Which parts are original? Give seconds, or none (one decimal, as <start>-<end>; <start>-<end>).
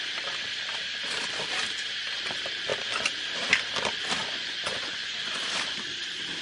0.0-4.2; 5.4-6.4